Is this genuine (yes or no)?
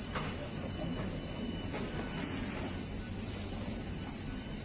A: yes